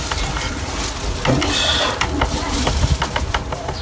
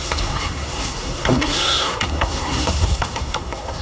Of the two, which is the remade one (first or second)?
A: second